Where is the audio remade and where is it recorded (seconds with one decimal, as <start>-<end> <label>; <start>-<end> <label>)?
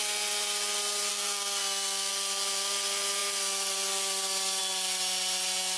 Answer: 0.0-1.1 recorded; 1.1-2.1 remade; 2.1-5.8 recorded